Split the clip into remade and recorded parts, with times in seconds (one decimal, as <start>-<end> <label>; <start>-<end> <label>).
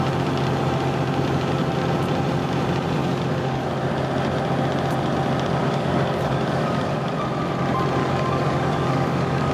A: 0.0-3.0 recorded; 3.0-3.6 remade; 3.6-5.6 recorded; 5.6-7.1 remade; 7.1-8.0 recorded; 8.0-9.5 remade